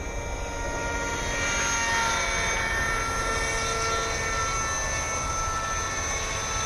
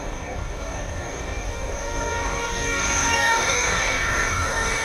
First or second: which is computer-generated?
second